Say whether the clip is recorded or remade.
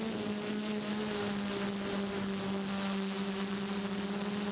recorded